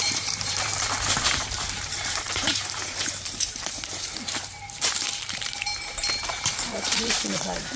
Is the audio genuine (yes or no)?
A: no